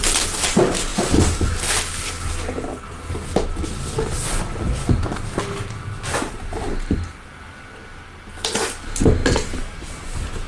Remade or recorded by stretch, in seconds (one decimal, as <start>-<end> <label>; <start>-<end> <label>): 0.0-10.5 recorded